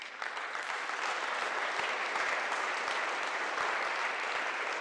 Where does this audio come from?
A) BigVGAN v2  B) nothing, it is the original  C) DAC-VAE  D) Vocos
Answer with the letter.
B